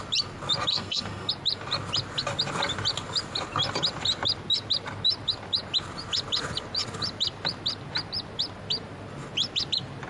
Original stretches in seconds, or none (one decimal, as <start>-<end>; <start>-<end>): 0.0-0.7; 1.3-10.1